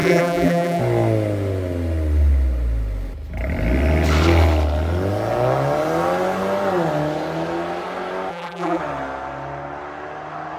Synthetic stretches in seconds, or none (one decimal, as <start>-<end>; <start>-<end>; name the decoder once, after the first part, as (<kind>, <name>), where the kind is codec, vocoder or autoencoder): 0.0-0.8 (vocoder, BigVGAN v2); 8.3-8.8